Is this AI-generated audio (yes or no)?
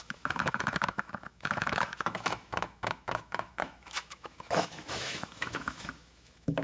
yes